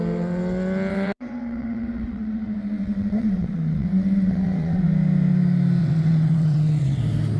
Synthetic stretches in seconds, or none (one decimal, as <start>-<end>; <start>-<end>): 0.9-4.8; 5.8-7.0